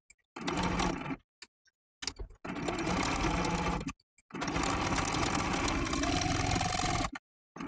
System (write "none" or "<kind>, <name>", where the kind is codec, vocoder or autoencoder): none